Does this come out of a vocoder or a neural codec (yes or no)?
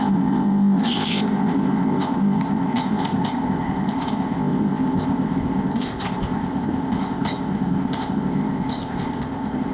yes